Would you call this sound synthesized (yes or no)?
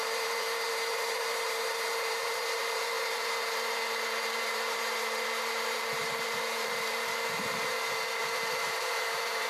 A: yes